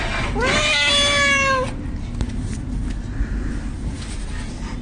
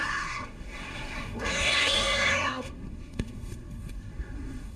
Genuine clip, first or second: first